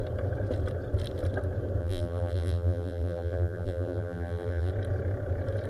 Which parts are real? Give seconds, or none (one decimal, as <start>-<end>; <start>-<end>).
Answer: 0.0-1.8; 4.7-5.7